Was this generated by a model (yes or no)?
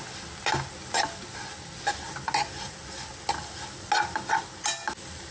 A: no